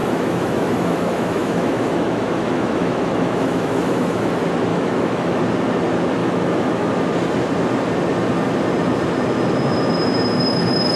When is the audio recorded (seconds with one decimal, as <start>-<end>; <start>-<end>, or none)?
4.3-4.7; 5.4-6.2; 6.9-11.0